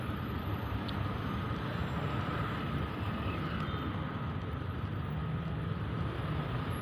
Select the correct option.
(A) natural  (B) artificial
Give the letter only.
A